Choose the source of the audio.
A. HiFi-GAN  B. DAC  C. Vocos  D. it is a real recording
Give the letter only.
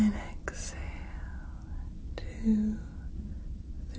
D